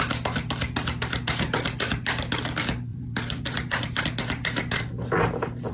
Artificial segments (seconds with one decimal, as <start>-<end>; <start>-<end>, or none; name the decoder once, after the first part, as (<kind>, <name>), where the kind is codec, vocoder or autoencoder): 2.9-4.0 (vocoder, BigVGAN v2)